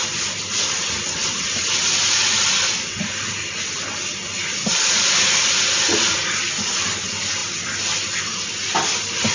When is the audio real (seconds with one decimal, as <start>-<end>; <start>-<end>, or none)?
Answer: 0.0-9.3